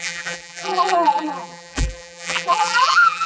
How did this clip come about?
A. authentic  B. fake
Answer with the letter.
B